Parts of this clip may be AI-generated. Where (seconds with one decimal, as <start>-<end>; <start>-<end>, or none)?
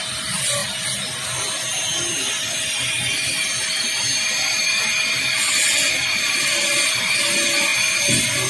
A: none